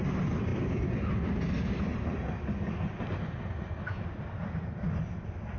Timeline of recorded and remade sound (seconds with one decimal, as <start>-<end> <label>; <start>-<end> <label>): 0.0-5.6 recorded